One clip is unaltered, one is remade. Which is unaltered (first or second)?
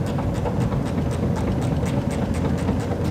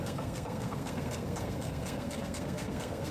first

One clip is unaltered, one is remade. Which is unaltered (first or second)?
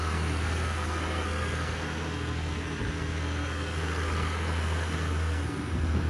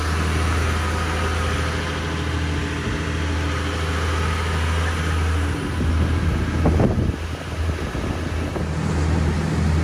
second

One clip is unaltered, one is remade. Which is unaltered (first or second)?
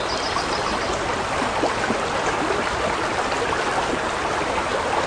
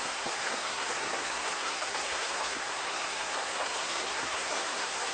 first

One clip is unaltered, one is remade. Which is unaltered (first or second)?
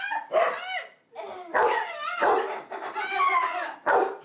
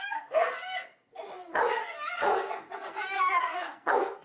first